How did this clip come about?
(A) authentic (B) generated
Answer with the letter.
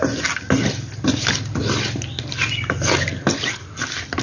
A